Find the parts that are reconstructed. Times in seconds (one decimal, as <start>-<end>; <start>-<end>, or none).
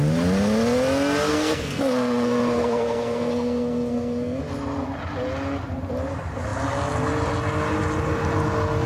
1.3-4.4